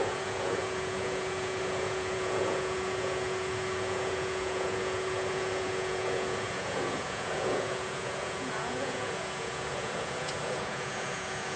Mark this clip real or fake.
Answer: fake